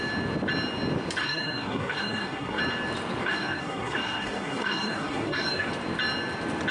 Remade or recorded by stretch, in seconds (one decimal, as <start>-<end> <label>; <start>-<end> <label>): 0.0-1.2 recorded; 1.2-2.6 remade; 2.6-3.2 recorded; 3.2-5.7 remade; 5.7-6.7 recorded